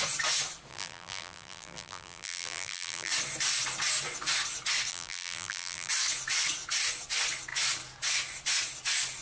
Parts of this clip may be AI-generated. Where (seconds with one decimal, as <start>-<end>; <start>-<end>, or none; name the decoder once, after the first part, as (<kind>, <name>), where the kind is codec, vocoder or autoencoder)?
0.7-3.1 (vocoder, BigVGAN v2); 4.9-5.9